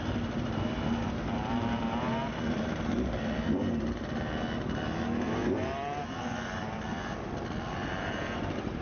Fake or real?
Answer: fake